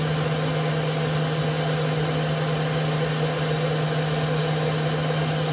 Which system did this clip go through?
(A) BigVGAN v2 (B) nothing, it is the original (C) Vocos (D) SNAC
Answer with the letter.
B